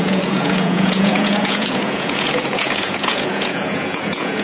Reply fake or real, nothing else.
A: fake